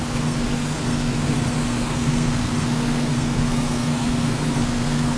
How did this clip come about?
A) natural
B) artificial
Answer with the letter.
B